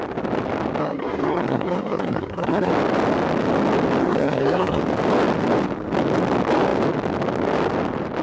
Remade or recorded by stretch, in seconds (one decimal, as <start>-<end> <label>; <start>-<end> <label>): 0.0-0.8 recorded; 0.8-2.7 remade; 2.7-4.0 recorded; 4.0-4.8 remade; 4.8-8.2 recorded